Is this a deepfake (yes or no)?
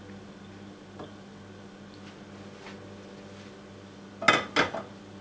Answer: no